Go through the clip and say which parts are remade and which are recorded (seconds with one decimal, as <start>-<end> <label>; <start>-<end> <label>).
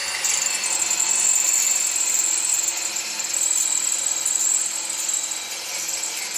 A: 0.0-6.4 recorded